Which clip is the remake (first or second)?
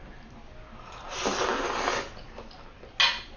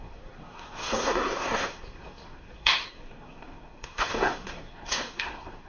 second